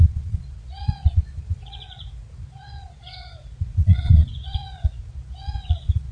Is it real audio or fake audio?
fake